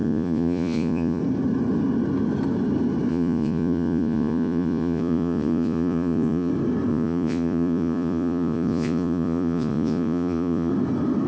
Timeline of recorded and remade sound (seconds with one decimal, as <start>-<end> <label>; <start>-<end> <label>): 0.0-1.2 remade; 1.2-3.1 recorded; 3.1-6.5 remade; 6.5-6.9 recorded; 6.9-10.7 remade; 10.7-11.3 recorded